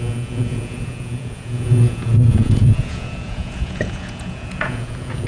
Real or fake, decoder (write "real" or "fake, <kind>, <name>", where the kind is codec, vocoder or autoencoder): fake, vocoder, Vocos